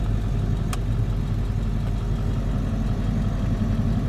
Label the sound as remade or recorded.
recorded